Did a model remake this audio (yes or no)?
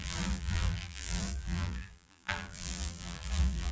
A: yes